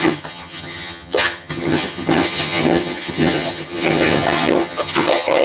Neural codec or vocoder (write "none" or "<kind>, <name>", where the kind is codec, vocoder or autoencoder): vocoder, HiFi-GAN